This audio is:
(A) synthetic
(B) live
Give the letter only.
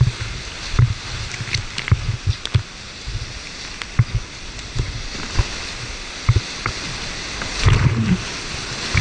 B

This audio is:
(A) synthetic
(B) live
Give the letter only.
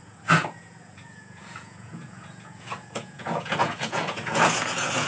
A